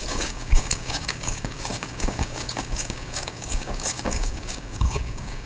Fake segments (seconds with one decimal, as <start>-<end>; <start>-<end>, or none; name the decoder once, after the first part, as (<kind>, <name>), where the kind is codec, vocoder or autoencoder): 0.0-5.5 (codec, DAC)